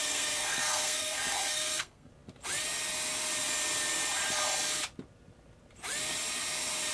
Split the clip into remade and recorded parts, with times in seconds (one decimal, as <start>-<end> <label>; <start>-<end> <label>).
0.0-2.1 remade; 2.1-6.9 recorded